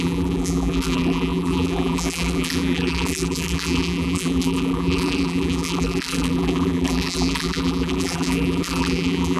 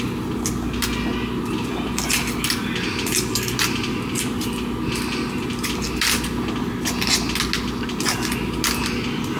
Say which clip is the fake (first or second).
first